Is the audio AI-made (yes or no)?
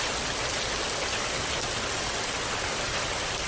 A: no